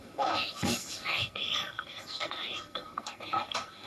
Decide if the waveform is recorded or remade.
remade